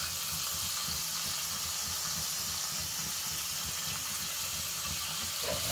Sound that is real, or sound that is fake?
real